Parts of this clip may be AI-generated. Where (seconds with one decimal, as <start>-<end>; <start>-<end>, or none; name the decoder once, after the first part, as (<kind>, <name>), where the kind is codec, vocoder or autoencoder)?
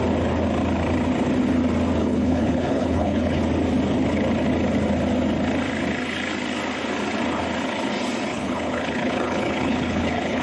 2.0-3.4 (codec, HILCodec); 8.3-10.4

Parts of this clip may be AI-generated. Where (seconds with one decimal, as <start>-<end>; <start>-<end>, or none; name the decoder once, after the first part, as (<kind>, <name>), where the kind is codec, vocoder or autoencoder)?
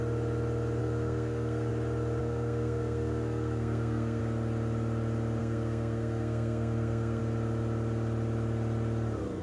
0.8-1.7 (codec, SNAC); 2.2-4.2; 5.4-7.2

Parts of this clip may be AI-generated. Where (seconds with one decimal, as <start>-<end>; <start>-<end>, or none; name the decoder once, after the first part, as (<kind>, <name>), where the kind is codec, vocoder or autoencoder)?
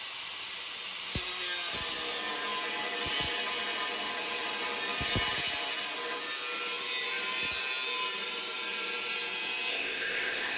9.7-10.6 (codec, ZipCodec)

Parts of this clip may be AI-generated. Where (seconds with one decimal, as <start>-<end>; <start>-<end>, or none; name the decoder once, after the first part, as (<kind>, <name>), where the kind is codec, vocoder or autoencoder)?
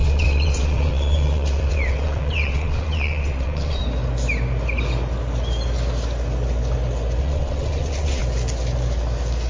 0.0-3.8 (vocoder, WaveNeXt); 7.2-8.2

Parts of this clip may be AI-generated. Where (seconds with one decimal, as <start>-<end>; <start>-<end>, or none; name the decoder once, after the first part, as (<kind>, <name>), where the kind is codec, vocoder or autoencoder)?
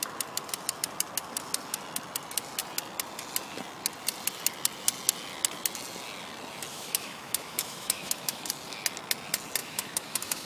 6.7-8.5 (autoencoder, DAC-VAE); 9.6-10.5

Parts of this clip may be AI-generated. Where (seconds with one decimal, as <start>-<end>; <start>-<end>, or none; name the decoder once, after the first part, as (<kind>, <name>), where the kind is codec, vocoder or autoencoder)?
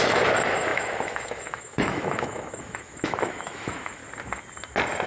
0.0-4.0 (autoencoder, DAC-VAE)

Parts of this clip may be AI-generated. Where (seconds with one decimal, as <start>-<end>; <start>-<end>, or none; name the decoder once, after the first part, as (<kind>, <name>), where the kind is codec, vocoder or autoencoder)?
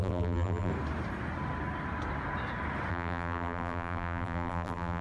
0.0-0.7 (vocoder, BigVGAN v2); 2.9-5.0